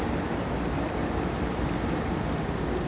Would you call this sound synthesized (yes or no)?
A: no